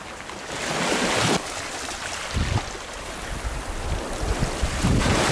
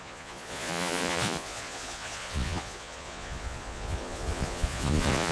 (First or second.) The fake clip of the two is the second